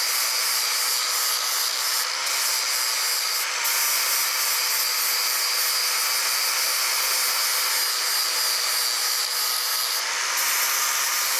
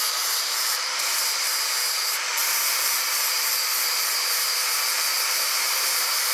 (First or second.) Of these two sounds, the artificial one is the second